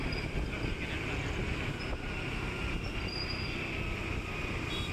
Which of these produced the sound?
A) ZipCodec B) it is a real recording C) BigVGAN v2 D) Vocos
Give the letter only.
B